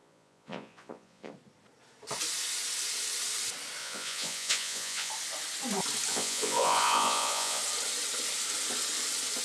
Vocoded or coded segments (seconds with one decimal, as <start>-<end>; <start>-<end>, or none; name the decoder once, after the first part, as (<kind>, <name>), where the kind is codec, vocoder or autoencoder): 0.0-1.3 (vocoder, Vocos); 3.8-5.1; 6.1-7.6